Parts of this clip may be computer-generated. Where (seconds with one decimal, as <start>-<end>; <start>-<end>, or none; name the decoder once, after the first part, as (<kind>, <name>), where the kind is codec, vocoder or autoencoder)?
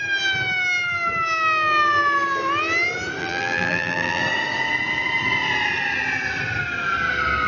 3.2-4.2 (vocoder, BigVGAN v2)